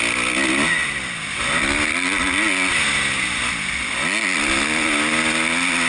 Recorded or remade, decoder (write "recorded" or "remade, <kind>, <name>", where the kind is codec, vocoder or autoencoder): recorded